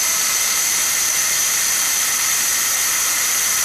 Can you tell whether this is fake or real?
fake